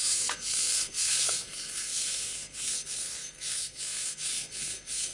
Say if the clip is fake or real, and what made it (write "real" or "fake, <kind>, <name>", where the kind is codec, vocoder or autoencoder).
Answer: fake, codec, SNAC